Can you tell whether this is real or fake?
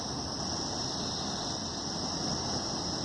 real